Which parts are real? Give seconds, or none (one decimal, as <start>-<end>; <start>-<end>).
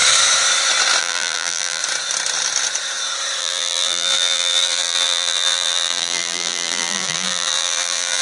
0.0-1.0; 1.8-3.4